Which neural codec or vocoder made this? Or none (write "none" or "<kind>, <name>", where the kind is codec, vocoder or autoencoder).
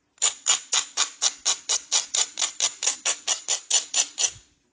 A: none